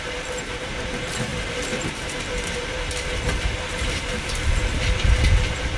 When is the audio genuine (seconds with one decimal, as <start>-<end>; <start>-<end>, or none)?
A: none